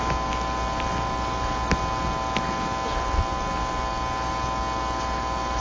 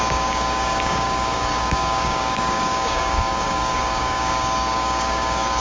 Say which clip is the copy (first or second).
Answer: second